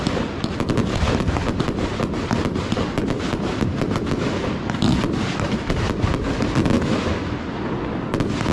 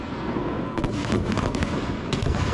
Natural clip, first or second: first